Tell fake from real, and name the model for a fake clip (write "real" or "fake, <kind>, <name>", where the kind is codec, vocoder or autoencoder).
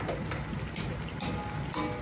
real